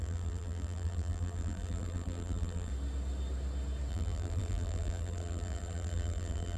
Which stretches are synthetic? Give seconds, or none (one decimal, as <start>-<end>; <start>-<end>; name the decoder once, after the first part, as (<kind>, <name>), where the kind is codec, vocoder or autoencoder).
0.0-2.7 (vocoder, BigVGAN v2); 3.9-6.6